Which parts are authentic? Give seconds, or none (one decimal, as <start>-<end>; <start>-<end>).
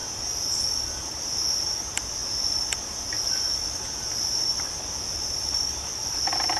0.0-1.0